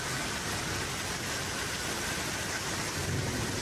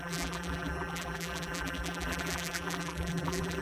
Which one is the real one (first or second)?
first